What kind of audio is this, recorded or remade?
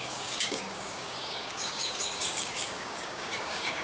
remade